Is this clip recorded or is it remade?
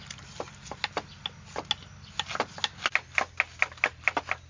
recorded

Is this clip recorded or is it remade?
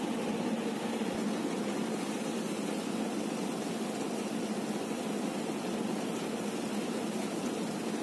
recorded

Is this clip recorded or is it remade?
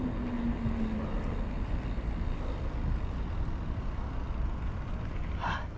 recorded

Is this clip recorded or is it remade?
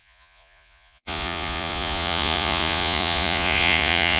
remade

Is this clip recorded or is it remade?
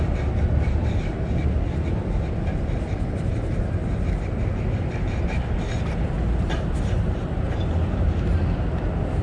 recorded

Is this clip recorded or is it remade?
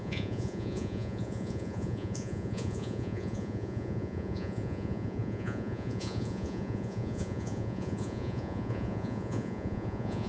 remade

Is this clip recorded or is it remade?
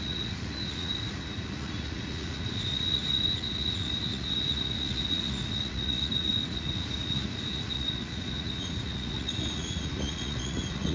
remade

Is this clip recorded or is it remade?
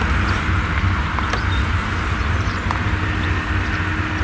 recorded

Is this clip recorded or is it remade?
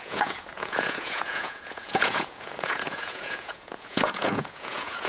remade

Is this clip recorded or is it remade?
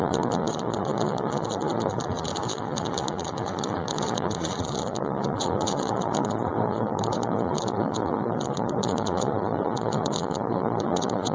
remade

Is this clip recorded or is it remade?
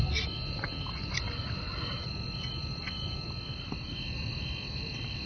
recorded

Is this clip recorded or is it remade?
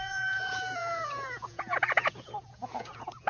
remade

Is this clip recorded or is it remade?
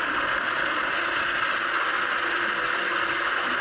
recorded